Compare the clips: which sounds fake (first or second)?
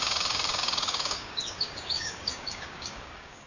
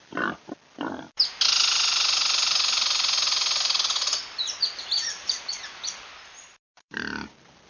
first